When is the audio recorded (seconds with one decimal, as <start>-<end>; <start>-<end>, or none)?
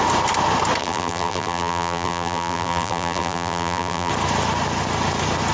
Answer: 0.0-0.8; 4.1-5.5